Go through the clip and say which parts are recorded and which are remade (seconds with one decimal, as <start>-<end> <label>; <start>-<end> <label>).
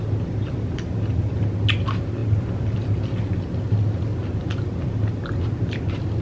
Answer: 0.0-6.2 recorded